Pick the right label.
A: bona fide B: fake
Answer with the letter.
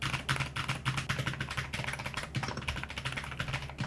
A